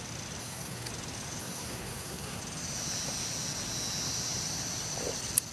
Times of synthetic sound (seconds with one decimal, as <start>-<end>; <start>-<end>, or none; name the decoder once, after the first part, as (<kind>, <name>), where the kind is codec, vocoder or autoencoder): 0.4-0.9 (codec, SNAC); 1.4-2.4